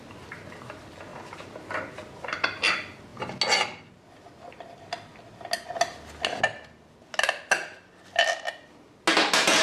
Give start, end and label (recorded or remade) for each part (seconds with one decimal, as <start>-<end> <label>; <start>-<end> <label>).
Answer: 0.0-9.6 recorded